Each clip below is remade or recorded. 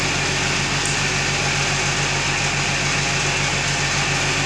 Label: recorded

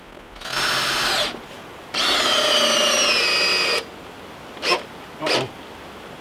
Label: recorded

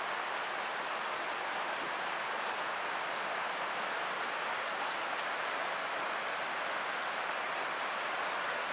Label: recorded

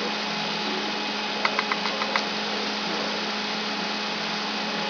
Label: recorded